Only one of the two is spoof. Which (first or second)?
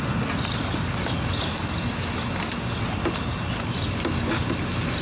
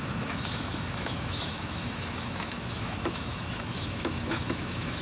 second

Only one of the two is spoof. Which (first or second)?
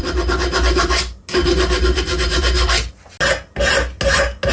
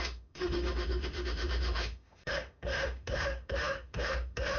second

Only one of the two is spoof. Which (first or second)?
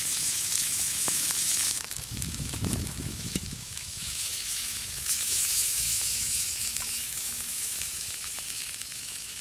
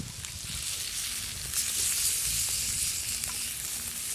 first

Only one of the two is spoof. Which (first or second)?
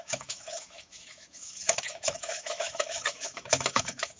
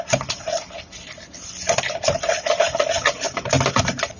first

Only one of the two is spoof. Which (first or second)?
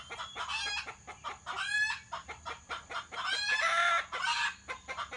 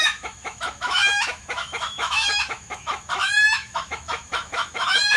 second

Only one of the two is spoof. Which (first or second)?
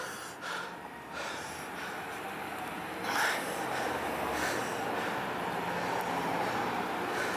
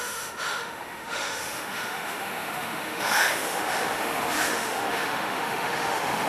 second